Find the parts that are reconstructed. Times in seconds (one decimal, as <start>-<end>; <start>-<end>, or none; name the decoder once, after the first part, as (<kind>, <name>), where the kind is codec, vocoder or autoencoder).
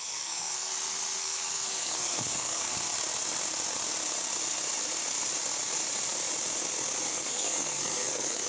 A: 0.0-0.7 (codec, SNAC); 1.2-2.7; 7.1-8.5